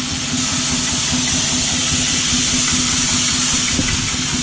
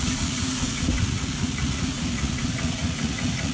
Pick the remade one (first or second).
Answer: second